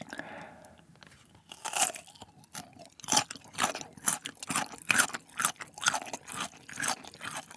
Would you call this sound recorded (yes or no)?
yes